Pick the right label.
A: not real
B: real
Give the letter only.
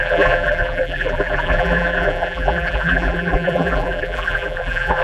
A